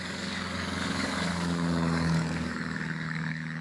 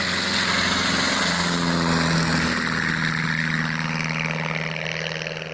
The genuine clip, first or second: second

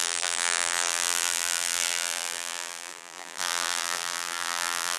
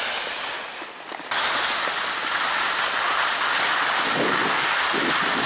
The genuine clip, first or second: second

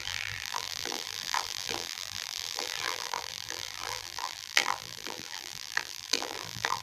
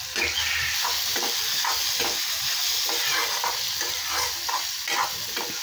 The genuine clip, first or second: second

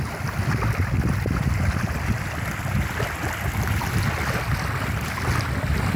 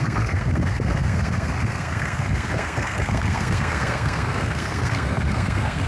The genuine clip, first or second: first